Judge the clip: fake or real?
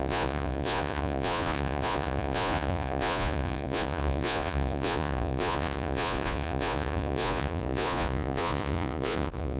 fake